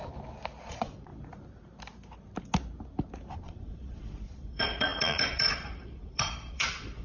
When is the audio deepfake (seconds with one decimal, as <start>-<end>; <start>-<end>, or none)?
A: 0.6-1.1; 3.3-7.0